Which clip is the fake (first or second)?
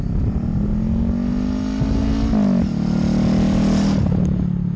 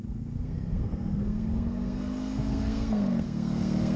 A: second